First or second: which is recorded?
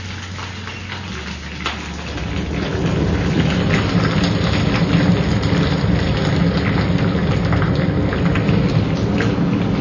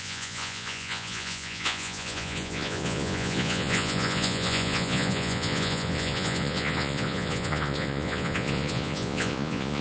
first